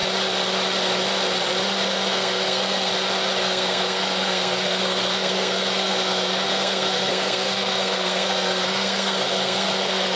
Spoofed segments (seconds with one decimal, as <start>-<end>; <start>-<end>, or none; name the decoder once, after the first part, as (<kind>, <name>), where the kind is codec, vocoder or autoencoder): 2.1-2.9 (codec, SNAC); 3.4-10.2